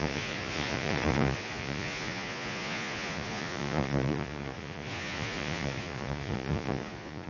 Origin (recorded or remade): remade